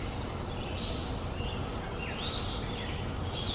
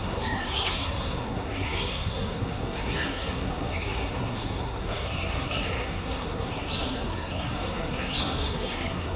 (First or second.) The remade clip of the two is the second